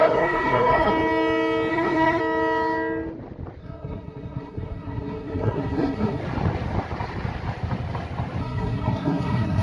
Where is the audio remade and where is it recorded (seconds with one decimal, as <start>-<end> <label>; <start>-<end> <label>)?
0.0-0.9 remade; 0.9-1.7 recorded; 1.7-2.2 remade; 2.2-3.6 recorded; 3.6-6.2 remade; 6.2-8.4 recorded; 8.4-9.6 remade